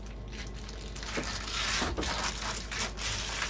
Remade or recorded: recorded